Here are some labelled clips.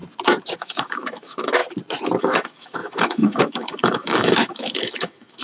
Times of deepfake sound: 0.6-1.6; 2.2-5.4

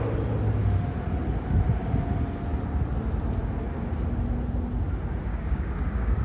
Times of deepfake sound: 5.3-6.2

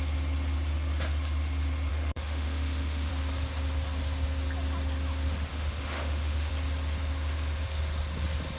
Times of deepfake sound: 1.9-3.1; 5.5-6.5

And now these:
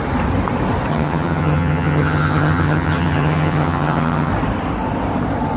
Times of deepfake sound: 0.9-4.3

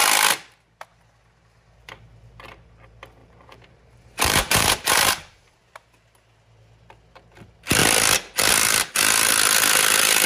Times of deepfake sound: 3.2-5.9

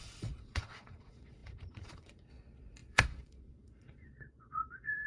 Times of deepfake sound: 0.0-5.1